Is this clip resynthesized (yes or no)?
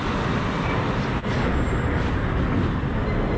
no